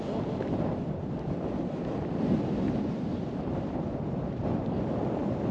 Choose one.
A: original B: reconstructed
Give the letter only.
A